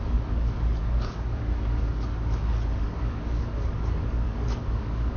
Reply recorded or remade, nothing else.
remade